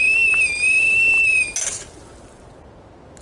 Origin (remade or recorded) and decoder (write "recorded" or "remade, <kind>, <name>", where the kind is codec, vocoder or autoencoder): recorded